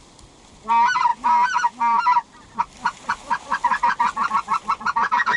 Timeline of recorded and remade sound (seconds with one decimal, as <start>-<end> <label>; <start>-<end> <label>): 0.0-5.4 recorded